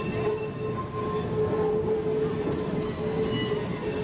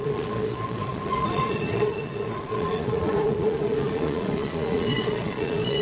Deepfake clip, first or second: second